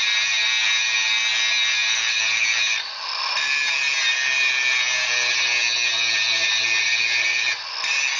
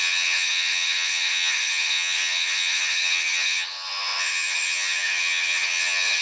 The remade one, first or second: second